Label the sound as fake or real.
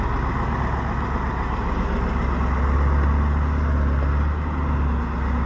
real